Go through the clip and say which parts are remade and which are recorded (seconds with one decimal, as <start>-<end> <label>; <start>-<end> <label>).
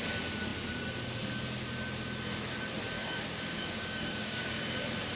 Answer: 0.0-3.0 recorded; 3.0-4.5 remade; 4.5-5.2 recorded